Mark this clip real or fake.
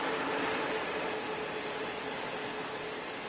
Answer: real